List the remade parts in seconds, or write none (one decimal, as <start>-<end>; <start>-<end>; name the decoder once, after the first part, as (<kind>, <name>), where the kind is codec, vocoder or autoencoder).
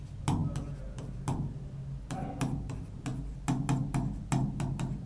none